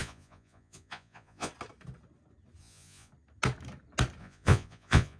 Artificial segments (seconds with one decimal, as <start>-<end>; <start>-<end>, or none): 0.0-1.5; 2.6-3.1; 4.2-5.2